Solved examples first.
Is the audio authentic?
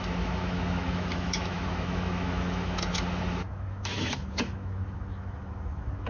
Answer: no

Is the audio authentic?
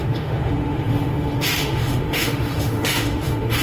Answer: no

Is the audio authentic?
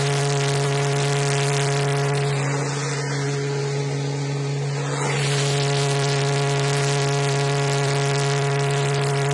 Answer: yes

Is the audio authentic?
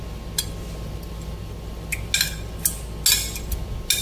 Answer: yes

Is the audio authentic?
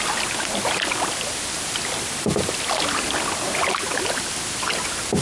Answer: yes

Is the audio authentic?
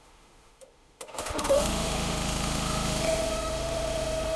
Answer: no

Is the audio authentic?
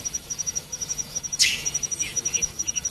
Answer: no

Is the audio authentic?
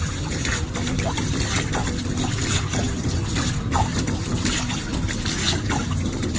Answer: yes